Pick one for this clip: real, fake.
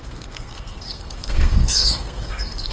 fake